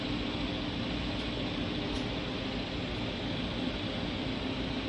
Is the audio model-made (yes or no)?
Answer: no